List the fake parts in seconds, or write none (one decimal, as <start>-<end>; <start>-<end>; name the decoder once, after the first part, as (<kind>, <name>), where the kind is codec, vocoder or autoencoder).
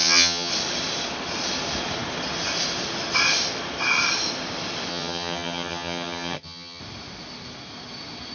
0.0-0.5 (vocoder, HiFi-GAN); 4.9-6.8